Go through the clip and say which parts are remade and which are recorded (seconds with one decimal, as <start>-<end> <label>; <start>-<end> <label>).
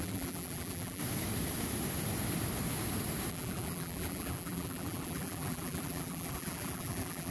0.0-1.0 remade; 1.0-3.3 recorded; 3.3-7.3 remade